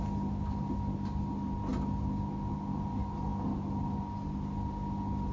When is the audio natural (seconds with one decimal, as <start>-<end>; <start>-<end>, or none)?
0.0-5.3